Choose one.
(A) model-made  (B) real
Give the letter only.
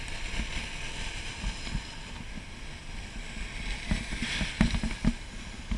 B